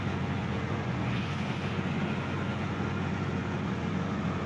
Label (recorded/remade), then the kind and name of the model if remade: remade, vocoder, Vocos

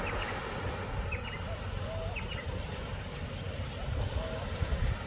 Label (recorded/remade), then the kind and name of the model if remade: recorded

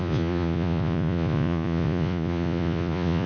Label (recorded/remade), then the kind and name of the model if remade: remade, vocoder, Vocos